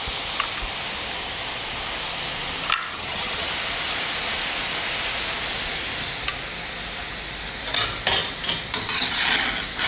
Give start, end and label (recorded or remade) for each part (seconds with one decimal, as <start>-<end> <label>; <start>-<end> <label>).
0.0-2.9 recorded; 2.9-3.5 remade; 3.5-9.9 recorded

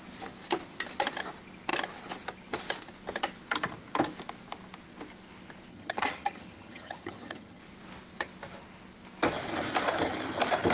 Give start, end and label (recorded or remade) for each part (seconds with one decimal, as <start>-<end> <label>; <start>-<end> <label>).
0.0-5.7 recorded; 5.7-7.6 remade; 7.6-10.7 recorded

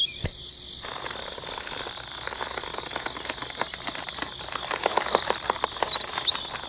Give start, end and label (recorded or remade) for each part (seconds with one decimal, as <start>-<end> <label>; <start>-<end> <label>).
0.0-6.7 recorded

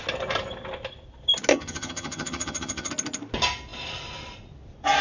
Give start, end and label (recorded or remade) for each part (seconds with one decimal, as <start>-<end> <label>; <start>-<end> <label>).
0.0-1.5 recorded; 1.5-2.9 remade; 2.9-5.0 recorded

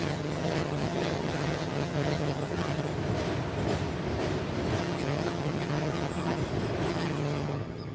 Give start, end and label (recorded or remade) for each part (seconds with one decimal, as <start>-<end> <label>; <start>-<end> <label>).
0.0-2.9 remade; 2.9-4.8 recorded; 4.8-6.4 remade; 6.4-6.9 recorded; 6.9-7.9 remade